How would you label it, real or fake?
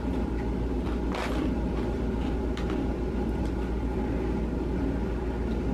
real